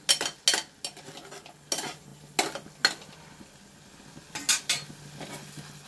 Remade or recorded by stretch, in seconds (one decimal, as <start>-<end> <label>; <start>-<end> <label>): 0.0-5.9 recorded